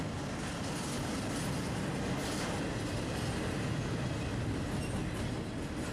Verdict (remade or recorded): recorded